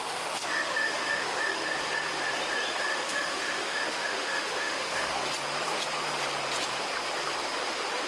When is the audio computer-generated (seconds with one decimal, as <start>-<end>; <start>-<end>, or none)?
0.0-1.7; 2.9-5.2